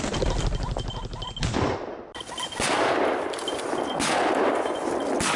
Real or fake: real